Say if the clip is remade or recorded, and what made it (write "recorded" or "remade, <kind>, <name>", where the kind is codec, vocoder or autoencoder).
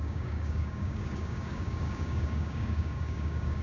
remade, codec, DAC